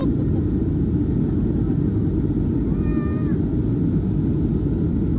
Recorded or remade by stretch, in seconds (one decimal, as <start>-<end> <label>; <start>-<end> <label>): 0.0-5.2 recorded